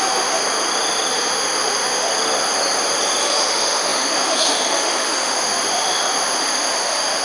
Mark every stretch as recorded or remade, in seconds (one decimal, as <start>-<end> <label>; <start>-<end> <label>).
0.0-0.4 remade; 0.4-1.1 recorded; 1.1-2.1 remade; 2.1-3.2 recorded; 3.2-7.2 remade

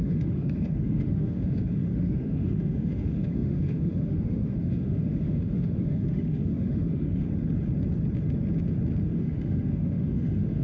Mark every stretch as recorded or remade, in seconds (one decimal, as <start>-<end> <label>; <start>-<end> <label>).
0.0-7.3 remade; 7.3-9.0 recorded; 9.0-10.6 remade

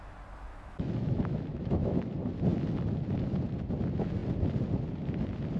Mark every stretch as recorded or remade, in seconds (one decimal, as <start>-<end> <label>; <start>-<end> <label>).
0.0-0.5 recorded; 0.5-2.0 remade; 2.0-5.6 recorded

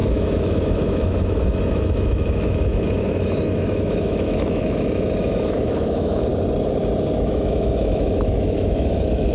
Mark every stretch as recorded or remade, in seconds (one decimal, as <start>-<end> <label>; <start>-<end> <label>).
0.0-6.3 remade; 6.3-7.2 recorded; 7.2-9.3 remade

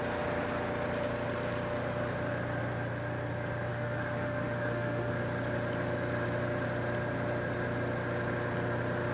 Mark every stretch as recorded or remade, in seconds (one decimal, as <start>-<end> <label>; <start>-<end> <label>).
0.0-3.7 recorded; 3.7-5.1 remade; 5.1-9.1 recorded

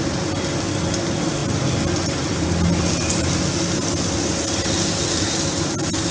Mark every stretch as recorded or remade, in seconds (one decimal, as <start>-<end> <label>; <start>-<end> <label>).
0.0-6.1 recorded

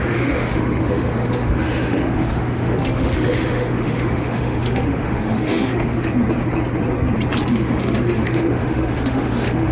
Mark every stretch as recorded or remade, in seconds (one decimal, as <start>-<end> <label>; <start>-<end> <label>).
0.0-6.1 remade; 6.1-7.5 recorded; 7.5-9.7 remade